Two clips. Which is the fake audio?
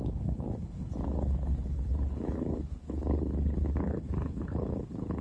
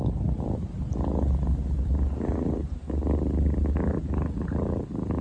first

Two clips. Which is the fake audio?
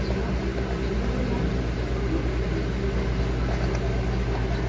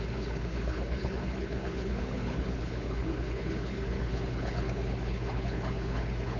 second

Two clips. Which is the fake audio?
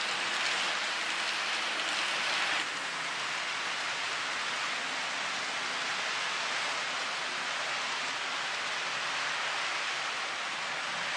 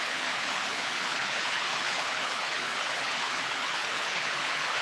second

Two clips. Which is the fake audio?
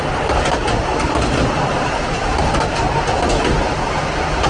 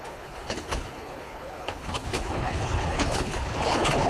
second